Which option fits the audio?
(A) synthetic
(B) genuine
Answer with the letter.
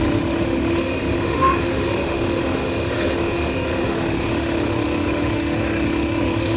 A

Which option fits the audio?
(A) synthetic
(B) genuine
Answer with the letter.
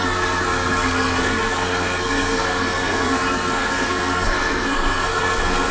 A